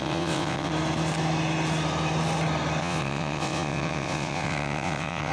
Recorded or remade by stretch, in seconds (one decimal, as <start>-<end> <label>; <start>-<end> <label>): 0.0-0.7 remade; 0.7-2.8 recorded; 2.8-5.3 remade